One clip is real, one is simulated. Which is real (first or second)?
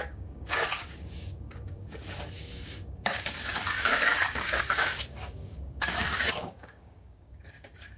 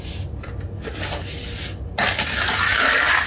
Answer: second